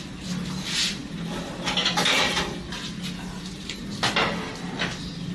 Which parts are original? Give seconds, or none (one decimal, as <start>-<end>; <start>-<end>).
0.0-5.3